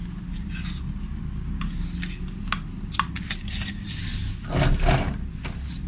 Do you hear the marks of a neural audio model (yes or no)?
no